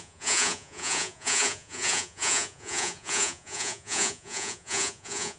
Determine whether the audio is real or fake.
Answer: fake